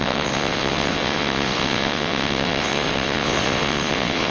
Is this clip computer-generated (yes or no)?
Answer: yes